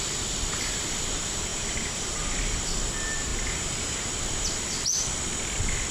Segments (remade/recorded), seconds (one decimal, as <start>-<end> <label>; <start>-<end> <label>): 0.0-1.5 recorded; 1.5-2.6 remade; 2.6-5.9 recorded

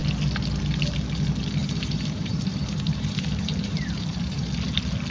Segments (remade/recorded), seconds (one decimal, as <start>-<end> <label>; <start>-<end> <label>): 0.0-1.6 recorded; 1.6-4.5 remade; 4.5-5.1 recorded

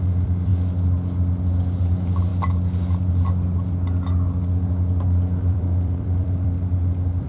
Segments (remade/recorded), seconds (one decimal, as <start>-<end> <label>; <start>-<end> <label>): 0.0-0.5 remade; 0.5-1.8 recorded; 1.8-2.3 remade; 2.3-5.4 recorded; 5.4-7.3 remade

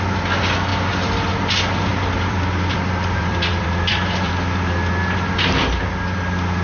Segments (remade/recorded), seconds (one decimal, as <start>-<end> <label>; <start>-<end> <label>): 0.0-1.9 recorded; 1.9-4.3 remade; 4.3-6.6 recorded

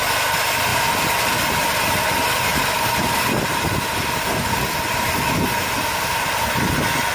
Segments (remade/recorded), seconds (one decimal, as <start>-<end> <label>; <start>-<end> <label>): 0.0-0.7 remade; 0.7-1.2 recorded; 1.2-2.5 remade; 2.5-4.5 recorded; 4.5-7.1 remade

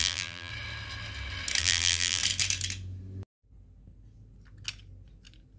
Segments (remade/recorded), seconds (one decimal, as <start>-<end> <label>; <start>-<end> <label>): 0.0-0.5 remade; 0.5-1.6 recorded; 1.6-2.2 remade; 2.2-5.6 recorded

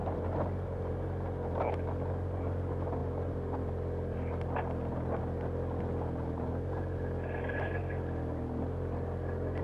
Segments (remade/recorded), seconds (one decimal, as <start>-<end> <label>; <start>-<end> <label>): 0.0-9.6 recorded